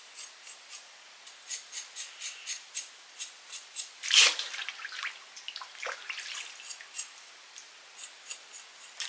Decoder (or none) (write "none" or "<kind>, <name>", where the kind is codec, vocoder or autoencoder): none